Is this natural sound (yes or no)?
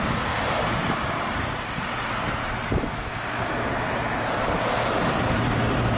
yes